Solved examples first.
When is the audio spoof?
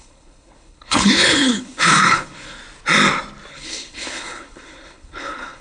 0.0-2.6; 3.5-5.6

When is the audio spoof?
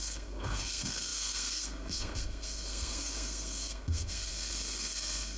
0.0-5.4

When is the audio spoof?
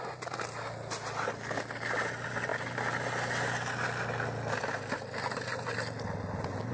none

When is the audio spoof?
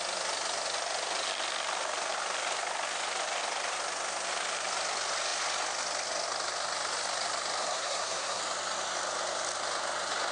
7.6-8.4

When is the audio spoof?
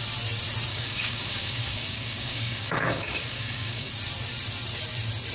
0.7-3.9